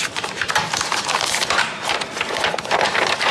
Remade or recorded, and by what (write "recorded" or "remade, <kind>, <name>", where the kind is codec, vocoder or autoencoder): remade, vocoder, BigVGAN v2